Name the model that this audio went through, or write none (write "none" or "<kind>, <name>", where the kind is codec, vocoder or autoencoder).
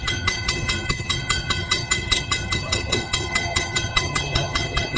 vocoder, HiFi-GAN